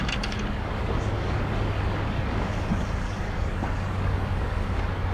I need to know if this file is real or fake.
fake